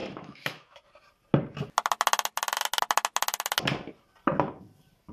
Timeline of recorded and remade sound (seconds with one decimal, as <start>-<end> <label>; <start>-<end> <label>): 0.0-0.8 remade; 0.8-5.1 recorded